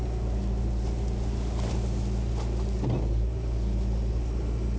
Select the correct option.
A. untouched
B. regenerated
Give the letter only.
A